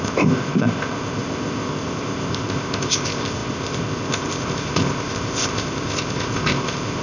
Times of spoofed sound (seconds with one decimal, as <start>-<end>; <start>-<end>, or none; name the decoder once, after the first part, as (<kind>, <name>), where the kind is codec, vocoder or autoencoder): 0.0-7.0 (codec, ZipCodec)